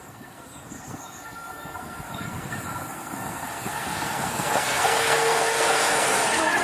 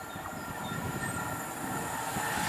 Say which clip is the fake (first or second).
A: first